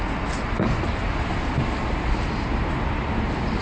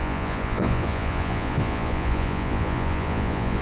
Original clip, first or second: first